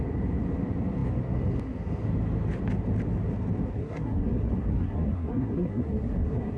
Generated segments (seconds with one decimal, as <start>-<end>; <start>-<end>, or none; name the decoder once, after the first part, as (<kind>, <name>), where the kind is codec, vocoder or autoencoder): 3.8-6.6 (codec, SNAC)